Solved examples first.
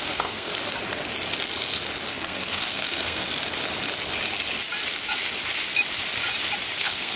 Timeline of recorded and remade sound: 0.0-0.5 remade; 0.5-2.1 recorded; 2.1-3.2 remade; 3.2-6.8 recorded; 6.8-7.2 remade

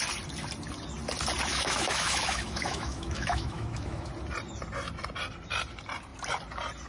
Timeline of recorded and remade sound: 0.0-1.5 recorded; 1.5-4.1 remade; 4.1-6.9 recorded

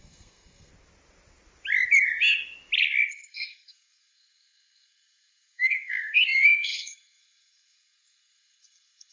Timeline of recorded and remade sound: 0.0-0.7 remade; 0.7-3.1 recorded; 3.1-9.1 remade

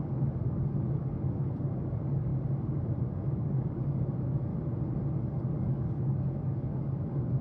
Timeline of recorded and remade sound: 0.0-2.3 remade; 2.3-3.0 recorded; 3.0-4.5 remade; 4.5-5.2 recorded; 5.2-7.4 remade

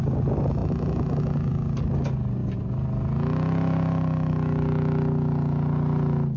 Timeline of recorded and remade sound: 0.0-6.4 recorded